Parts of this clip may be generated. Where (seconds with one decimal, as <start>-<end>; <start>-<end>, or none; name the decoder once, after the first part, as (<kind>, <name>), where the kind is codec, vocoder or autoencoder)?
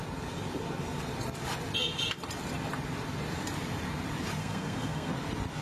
4.4-5.1 (codec, SNAC)